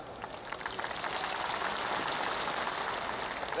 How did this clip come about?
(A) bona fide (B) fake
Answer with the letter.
A